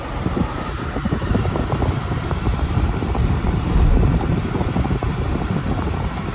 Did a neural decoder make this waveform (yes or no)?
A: yes